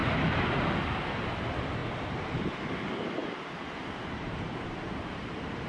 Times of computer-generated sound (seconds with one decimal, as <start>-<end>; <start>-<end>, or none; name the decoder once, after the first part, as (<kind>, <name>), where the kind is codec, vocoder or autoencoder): 0.0-0.6 (vocoder, BigVGAN v2); 3.2-5.7